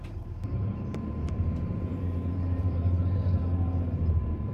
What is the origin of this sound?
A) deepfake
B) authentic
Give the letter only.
A